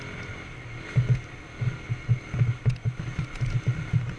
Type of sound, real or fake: real